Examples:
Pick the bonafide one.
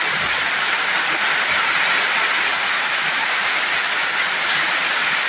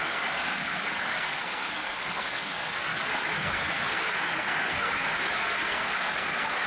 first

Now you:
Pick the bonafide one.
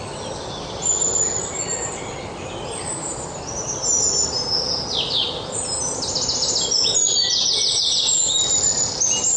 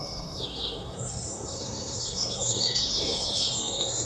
first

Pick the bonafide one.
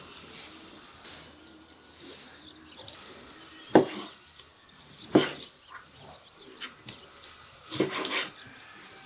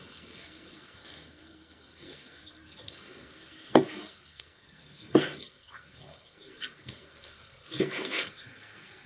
first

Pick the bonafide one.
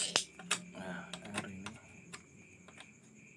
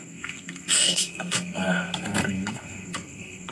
first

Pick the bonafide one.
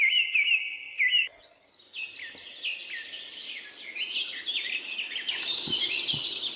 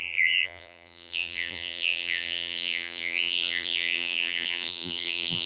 first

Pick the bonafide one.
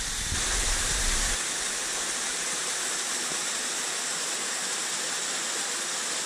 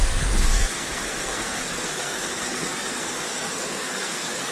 first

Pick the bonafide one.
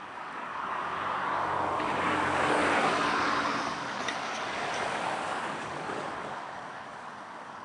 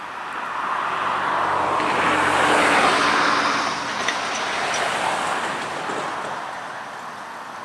second